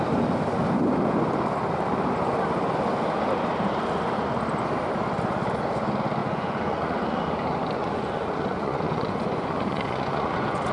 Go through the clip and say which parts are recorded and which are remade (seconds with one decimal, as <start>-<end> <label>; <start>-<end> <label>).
0.0-6.2 recorded; 6.2-7.2 remade; 7.2-7.8 recorded; 7.8-10.7 remade